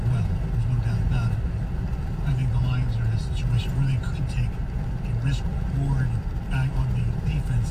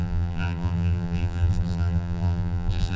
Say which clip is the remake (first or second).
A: second